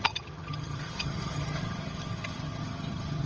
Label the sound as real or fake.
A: fake